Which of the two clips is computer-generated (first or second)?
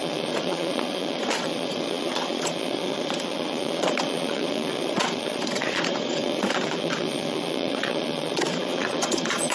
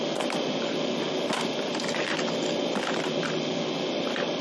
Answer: first